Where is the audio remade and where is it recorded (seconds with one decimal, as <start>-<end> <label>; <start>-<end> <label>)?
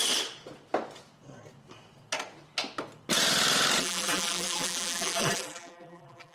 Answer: 0.0-3.8 recorded; 3.8-6.3 remade